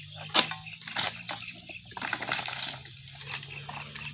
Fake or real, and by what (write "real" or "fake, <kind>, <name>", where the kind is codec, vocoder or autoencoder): real